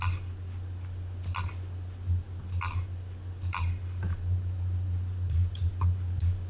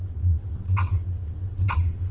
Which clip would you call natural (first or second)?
first